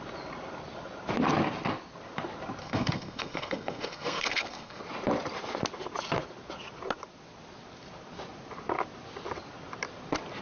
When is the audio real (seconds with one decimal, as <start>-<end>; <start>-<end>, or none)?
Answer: 0.0-2.6; 4.8-10.4